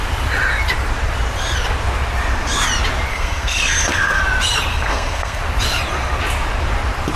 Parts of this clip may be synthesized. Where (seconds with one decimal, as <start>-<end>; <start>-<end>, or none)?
3.1-4.2; 4.7-5.4